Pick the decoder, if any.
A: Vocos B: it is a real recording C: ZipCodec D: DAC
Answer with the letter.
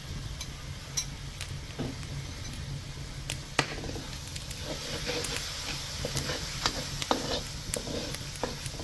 B